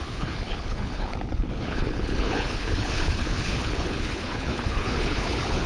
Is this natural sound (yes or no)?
no